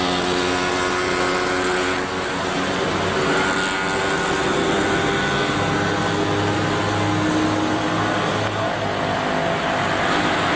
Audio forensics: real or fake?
real